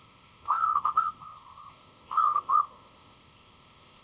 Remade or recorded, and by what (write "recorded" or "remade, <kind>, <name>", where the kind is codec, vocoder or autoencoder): remade, codec, ZipCodec